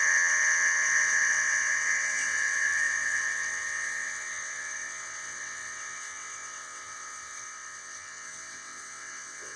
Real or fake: fake